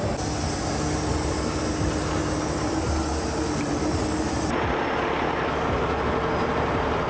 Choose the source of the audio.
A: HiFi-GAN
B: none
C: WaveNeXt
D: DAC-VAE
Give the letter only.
B